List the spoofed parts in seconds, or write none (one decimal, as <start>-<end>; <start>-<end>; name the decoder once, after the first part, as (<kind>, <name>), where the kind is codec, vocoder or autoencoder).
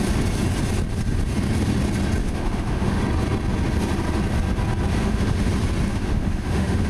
2.2-3.0 (autoencoder, DAC-VAE); 5.0-5.5; 5.9-6.9